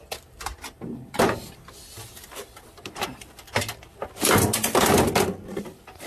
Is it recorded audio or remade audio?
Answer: recorded